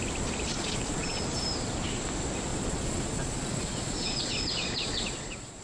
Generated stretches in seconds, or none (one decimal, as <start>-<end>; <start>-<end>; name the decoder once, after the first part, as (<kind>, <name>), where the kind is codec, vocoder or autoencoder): 0.5-1.2 (vocoder, Vocos); 2.5-5.6

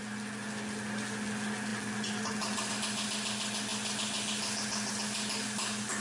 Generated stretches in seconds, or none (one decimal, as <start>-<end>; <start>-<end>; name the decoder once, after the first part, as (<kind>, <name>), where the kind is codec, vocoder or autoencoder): none

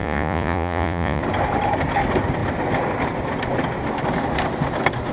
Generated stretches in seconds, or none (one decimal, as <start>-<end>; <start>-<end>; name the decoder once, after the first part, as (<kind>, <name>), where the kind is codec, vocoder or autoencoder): 0.0-1.2 (vocoder, Vocos)